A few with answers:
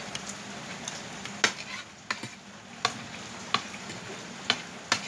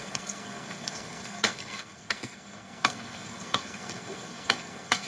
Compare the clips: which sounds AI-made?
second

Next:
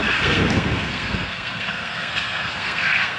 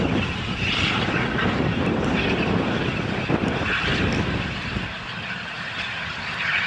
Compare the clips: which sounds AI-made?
first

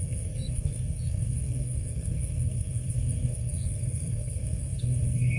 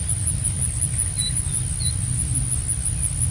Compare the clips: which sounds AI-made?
first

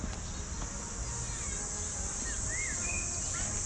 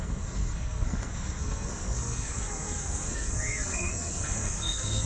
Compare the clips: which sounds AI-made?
second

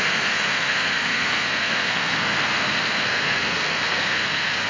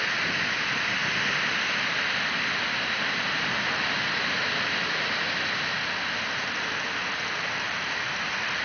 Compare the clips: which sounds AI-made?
first